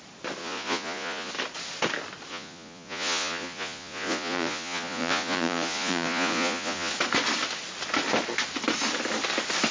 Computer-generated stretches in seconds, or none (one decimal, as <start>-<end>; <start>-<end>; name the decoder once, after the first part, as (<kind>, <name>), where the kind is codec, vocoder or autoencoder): 0.4-1.3 (vocoder, Vocos); 2.3-6.9